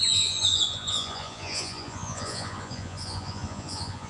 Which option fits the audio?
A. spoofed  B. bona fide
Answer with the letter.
A